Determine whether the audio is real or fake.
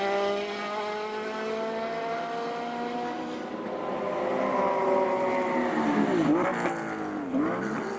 real